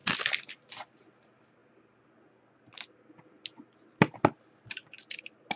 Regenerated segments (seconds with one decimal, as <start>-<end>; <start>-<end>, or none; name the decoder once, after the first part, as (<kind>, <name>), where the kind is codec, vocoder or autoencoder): 0.0-0.5 (vocoder, BigVGAN v2)